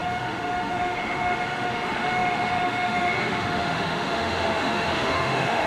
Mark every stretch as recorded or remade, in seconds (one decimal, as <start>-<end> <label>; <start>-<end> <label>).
0.0-5.7 remade